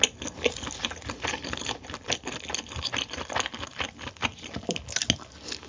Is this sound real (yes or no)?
yes